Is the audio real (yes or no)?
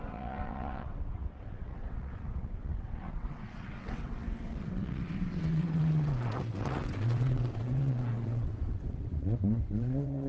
no